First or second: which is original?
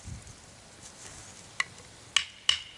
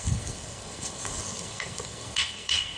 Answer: first